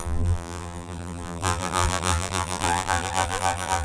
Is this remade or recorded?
remade